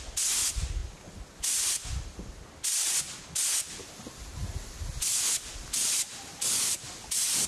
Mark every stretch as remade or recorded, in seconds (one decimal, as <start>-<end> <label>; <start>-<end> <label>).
0.0-7.5 recorded